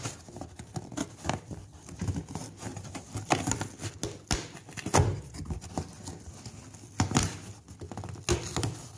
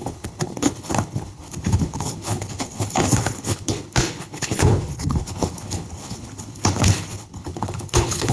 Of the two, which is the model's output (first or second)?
second